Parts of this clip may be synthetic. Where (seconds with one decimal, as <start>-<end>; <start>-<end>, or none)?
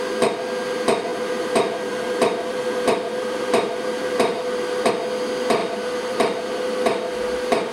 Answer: 1.1-4.9; 5.6-7.7